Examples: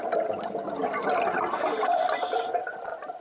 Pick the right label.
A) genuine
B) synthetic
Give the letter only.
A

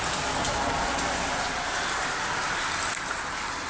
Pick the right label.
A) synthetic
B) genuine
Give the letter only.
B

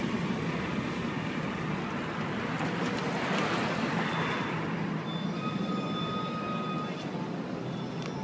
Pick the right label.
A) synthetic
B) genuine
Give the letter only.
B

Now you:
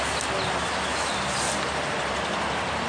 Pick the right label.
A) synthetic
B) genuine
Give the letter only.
B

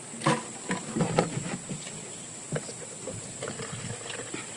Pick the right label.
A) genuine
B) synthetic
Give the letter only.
A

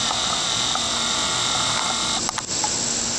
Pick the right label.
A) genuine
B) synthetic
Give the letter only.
A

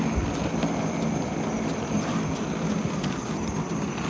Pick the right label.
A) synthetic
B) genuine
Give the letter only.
B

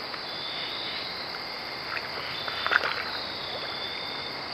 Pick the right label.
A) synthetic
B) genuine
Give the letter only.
B